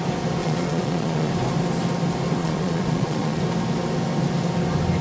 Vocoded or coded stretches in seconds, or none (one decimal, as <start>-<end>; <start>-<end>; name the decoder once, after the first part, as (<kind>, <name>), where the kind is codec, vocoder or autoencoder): 0.4-1.3 (vocoder, Vocos); 2.4-3.4

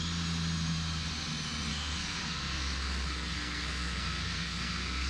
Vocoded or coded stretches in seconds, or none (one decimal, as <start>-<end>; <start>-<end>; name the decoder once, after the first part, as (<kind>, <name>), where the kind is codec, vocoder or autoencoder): 1.7-5.1 (codec, SNAC)

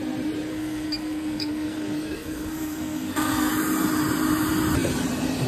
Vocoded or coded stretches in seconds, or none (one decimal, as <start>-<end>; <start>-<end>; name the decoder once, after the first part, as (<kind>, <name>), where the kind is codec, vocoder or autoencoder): 0.5-3.5 (codec, SNAC)

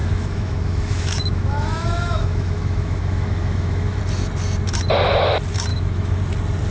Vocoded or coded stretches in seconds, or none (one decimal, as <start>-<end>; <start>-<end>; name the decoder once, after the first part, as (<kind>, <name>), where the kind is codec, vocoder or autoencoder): 0.0-4.0 (autoencoder, DAC-VAE); 5.7-6.2

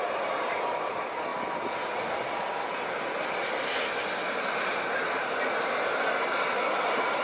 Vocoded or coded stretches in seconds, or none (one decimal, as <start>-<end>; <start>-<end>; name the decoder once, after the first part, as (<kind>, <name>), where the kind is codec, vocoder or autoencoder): none

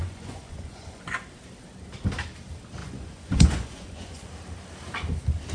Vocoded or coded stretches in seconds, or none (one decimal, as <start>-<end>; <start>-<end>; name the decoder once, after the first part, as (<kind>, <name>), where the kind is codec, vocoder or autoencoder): 0.0-1.0 (vocoder, Vocos); 2.8-4.3

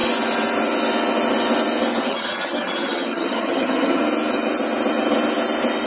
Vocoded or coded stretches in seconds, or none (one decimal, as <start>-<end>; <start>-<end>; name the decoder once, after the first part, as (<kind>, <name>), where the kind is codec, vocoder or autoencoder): 1.9-4.0 (vocoder, HiFi-GAN)